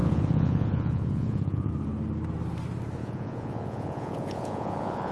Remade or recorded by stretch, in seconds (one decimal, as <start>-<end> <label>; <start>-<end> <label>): 0.0-1.7 remade; 1.7-3.0 recorded; 3.0-5.1 remade